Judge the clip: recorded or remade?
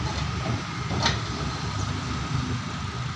recorded